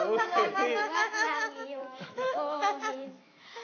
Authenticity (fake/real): fake